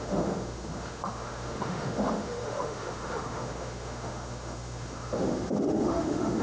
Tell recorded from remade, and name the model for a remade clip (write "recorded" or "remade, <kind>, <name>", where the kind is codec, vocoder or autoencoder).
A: remade, autoencoder, DAC-VAE